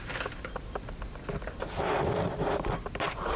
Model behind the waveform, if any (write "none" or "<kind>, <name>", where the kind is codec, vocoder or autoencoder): none